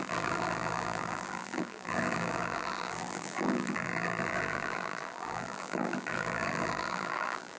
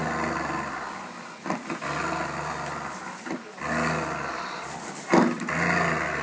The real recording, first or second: second